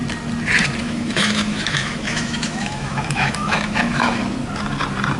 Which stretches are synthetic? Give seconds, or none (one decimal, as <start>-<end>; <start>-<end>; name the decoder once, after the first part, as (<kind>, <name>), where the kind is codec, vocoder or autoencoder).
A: 0.8-4.2 (autoencoder, DAC-VAE)